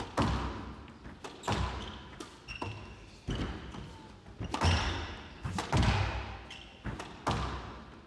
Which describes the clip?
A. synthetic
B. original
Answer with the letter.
B